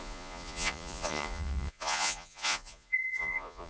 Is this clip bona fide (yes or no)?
no